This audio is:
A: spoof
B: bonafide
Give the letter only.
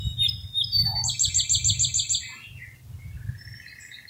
B